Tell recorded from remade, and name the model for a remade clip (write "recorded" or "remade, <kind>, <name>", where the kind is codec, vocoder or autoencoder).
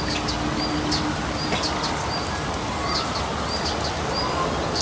recorded